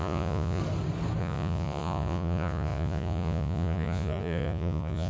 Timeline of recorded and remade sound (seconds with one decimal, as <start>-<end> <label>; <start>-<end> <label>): 0.0-0.6 remade; 0.6-1.2 recorded; 1.2-5.1 remade